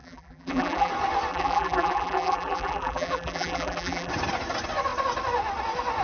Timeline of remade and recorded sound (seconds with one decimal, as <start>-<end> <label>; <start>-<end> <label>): 0.0-0.9 remade; 0.9-1.3 recorded; 1.3-4.1 remade; 4.1-6.0 recorded